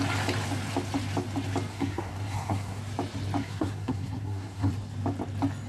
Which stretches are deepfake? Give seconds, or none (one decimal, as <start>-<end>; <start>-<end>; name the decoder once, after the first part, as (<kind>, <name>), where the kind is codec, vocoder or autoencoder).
1.7-2.8 (codec, SNAC); 3.4-4.7